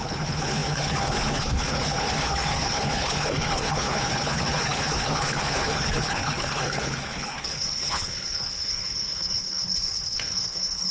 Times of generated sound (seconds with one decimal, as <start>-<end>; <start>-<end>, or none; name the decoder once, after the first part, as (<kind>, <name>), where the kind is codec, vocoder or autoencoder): 0.0-10.9 (codec, HILCodec)